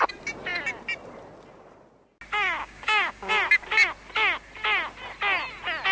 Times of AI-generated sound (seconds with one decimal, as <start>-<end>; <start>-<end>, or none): 2.6-3.3